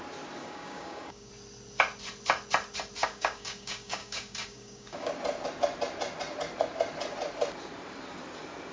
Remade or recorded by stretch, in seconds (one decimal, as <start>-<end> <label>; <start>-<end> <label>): 0.0-0.4 recorded; 0.4-1.3 remade; 1.3-3.0 recorded; 3.0-5.1 remade; 5.1-8.7 recorded